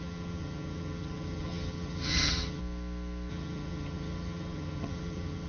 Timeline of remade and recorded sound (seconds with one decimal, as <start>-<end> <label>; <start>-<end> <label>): 0.0-2.6 remade; 2.6-3.3 recorded; 3.3-5.5 remade